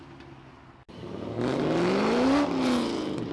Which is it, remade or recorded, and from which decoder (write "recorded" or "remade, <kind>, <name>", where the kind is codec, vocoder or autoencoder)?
recorded